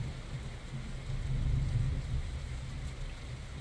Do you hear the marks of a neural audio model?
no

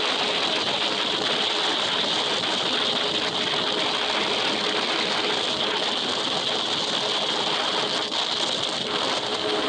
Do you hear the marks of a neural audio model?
no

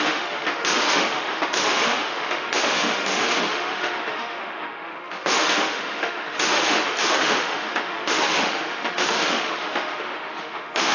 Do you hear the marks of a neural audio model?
yes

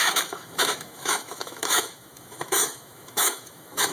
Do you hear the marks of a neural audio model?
yes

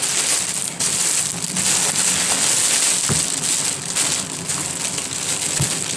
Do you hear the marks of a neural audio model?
no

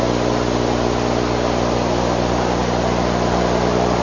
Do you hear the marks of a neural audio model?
no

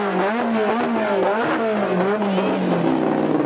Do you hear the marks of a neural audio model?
no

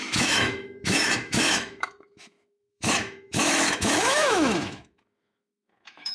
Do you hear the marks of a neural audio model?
yes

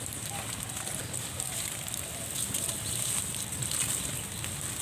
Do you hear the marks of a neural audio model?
no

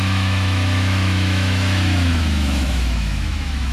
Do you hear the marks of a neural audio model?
yes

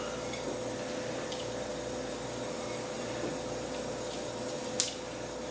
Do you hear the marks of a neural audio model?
no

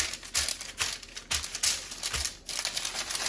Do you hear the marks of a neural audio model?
no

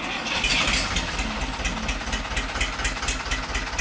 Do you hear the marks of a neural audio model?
no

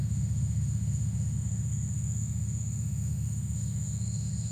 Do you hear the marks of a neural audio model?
yes